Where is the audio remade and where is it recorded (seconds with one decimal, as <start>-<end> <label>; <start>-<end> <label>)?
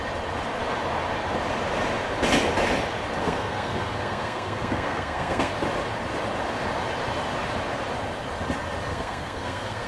0.0-3.2 recorded; 3.2-5.5 remade; 5.5-8.9 recorded; 8.9-9.9 remade